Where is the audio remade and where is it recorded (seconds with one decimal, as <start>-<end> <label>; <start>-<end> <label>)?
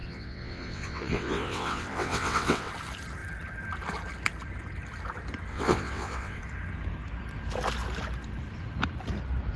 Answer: 0.0-2.7 remade; 2.7-5.5 recorded; 5.5-6.4 remade; 6.4-9.6 recorded